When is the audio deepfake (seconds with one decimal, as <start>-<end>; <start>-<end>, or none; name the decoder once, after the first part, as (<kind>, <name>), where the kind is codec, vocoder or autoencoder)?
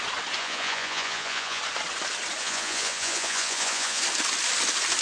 0.4-1.6 (vocoder, Vocos); 2.4-4.0